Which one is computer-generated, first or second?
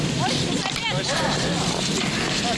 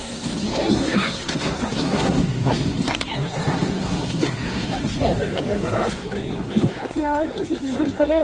second